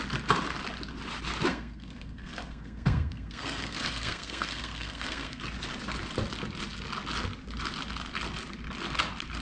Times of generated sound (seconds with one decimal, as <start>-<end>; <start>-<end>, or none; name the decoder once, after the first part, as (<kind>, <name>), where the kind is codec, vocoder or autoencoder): 1.5-5.4 (codec, SNAC)